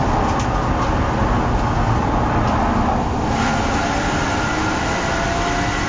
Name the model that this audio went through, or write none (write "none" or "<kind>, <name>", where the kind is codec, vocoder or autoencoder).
none